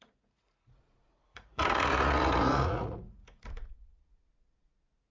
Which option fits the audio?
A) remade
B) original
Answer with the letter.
A